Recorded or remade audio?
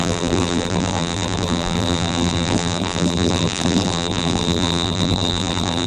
remade